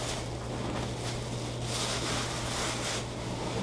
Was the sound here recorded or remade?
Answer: recorded